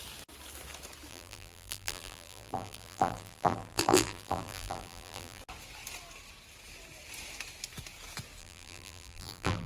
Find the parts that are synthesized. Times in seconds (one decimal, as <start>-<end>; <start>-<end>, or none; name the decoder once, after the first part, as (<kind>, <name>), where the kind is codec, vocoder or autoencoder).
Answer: 1.1-5.4 (vocoder, BigVGAN v2); 8.4-9.7